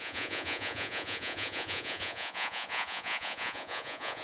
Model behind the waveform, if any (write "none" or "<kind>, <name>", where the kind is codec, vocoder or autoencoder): vocoder, Vocos